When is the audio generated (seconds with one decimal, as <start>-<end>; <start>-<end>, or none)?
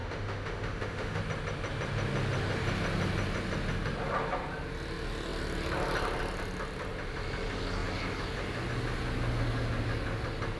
0.0-1.2